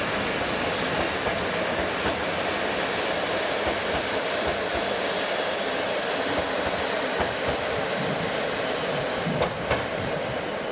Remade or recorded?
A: recorded